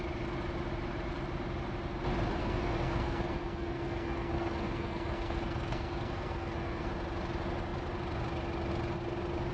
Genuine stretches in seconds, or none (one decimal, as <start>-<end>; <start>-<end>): 0.0-2.4; 6.9-9.5